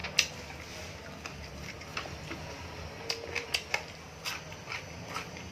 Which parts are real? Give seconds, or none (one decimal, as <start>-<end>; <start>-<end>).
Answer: 0.0-5.5